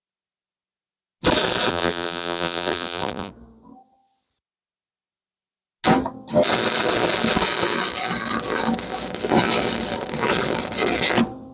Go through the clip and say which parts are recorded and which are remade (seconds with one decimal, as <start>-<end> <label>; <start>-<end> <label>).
0.0-1.7 recorded; 1.7-3.3 remade; 3.3-11.5 recorded